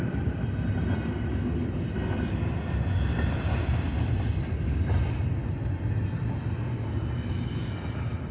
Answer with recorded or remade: recorded